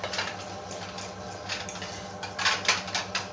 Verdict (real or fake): real